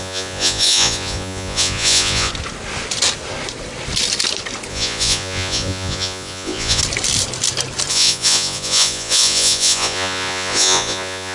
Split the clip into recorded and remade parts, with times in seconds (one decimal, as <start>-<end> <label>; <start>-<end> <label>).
0.0-2.3 remade; 2.3-4.7 recorded; 4.7-6.8 remade; 6.8-7.9 recorded; 7.9-11.3 remade